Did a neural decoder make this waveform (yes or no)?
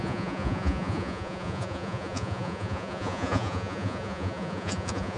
yes